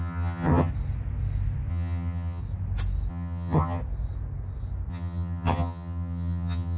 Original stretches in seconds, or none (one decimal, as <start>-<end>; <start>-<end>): 0.7-1.7; 2.4-3.1; 3.8-4.9